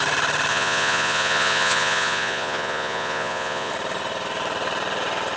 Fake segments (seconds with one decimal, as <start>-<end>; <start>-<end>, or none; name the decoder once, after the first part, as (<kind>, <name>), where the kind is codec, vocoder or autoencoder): 0.5-3.7 (vocoder, Vocos)